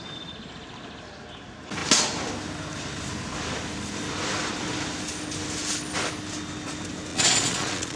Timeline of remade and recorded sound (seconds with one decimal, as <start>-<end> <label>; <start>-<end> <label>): 0.0-7.1 recorded; 7.1-8.0 remade